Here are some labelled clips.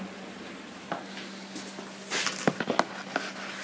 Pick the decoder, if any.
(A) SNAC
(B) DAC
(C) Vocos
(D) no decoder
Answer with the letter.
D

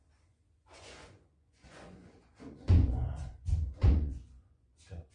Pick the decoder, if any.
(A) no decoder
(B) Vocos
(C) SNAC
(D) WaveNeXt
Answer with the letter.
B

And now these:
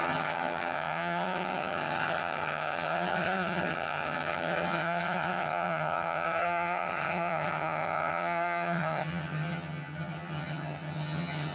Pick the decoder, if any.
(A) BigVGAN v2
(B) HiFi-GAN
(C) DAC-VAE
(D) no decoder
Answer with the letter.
B